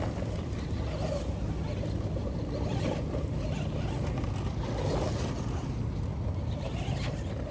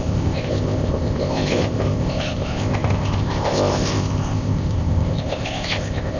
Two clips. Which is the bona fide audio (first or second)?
first